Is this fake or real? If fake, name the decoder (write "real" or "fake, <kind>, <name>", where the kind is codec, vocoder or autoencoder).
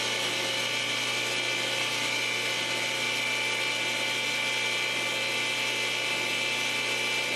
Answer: real